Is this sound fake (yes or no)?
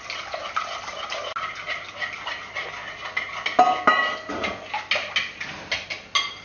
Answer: no